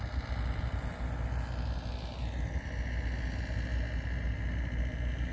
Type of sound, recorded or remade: recorded